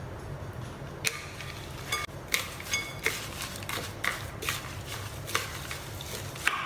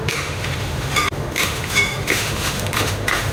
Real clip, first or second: first